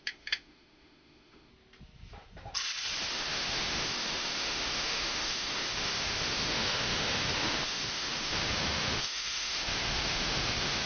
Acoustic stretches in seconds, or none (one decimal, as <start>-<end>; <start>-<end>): 1.5-3.1